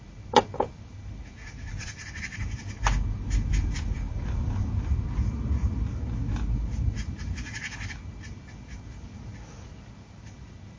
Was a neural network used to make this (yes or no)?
no